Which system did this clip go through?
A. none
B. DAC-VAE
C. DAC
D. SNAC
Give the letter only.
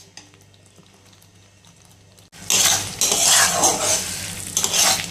A